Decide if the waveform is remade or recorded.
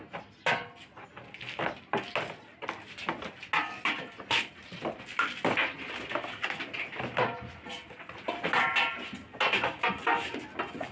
recorded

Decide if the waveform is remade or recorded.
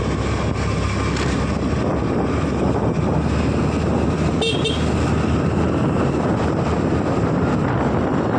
recorded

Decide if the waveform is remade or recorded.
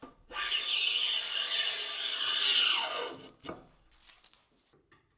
recorded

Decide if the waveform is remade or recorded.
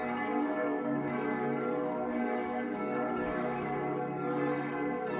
remade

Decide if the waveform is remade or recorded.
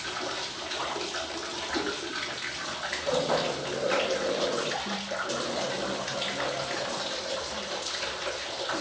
recorded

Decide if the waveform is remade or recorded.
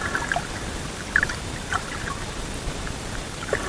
remade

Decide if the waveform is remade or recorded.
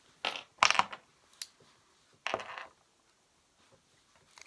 recorded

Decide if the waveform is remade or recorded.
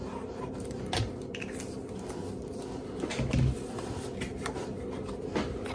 recorded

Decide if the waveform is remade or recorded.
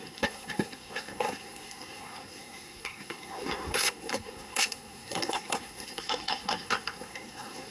remade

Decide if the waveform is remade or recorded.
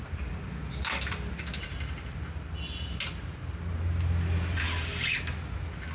recorded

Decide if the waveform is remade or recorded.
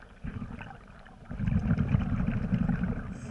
recorded